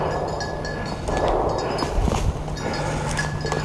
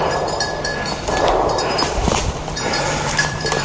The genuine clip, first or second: first